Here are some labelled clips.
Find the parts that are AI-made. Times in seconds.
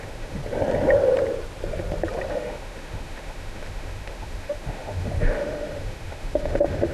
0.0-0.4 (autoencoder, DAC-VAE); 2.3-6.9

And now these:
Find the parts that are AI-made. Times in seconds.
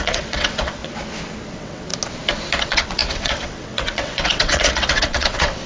0.0-0.8 (vocoder, WaveNeXt); 1.5-1.9; 2.6-5.7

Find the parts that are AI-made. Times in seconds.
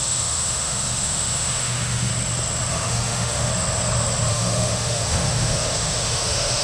0.0-2.1 (autoencoder, DAC-VAE); 2.7-3.5; 4.3-6.6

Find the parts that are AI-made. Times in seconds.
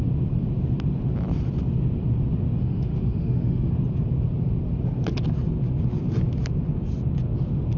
2.6-3.7 (autoencoder, DAC-VAE)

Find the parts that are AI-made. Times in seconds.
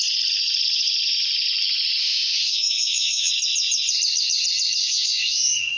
2.0-3.3 (autoencoder, DAC-VAE); 4.8-5.8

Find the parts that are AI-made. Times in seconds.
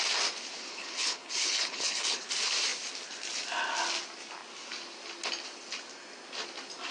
0.7-2.3 (codec, HILCodec)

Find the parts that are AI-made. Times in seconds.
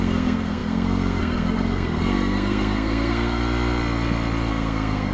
0.0-3.4 (codec, SNAC); 4.5-5.1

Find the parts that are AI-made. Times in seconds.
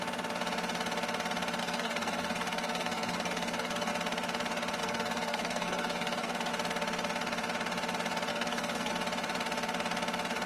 1.6-3.9 (codec, SNAC); 4.8-6.5; 8.3-8.9